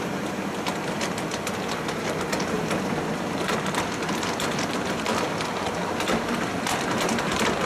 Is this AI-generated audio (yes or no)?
no